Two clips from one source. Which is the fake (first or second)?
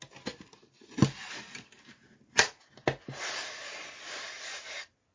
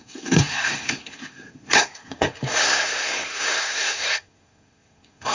second